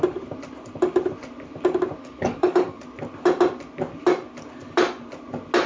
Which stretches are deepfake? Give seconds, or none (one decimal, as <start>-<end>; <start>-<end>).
2.0-2.8